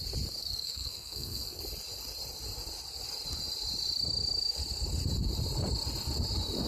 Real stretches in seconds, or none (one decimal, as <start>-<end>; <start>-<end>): 0.0-0.4; 1.6-6.7